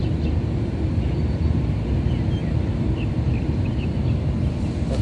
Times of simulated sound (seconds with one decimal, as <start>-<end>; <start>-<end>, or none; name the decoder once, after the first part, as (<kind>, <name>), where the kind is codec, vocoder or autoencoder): 0.0-0.6 (vocoder, BigVGAN v2); 2.4-4.2